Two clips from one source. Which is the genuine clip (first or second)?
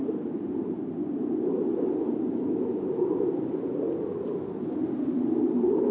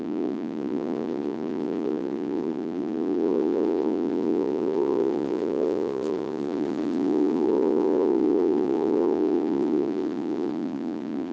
first